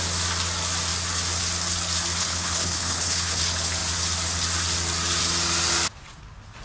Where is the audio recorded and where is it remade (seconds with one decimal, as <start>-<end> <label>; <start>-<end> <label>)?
0.0-2.2 recorded; 2.2-3.4 remade; 3.4-6.6 recorded